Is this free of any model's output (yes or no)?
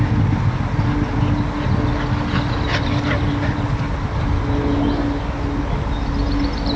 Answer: yes